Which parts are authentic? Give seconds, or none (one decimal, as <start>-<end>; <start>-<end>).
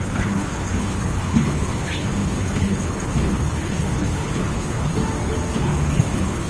4.9-5.5